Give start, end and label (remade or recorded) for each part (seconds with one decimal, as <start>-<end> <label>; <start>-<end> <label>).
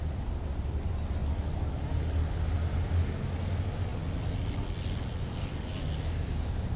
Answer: 0.0-6.8 recorded